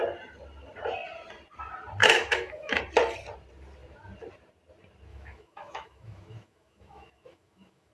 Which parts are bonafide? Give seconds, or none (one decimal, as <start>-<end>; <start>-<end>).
0.0-2.0; 2.8-5.1